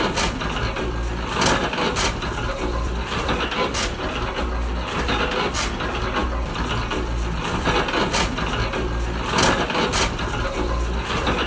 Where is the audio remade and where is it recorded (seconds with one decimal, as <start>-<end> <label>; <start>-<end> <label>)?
0.0-11.5 recorded